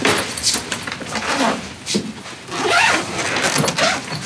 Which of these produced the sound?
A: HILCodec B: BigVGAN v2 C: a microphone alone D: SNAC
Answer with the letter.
B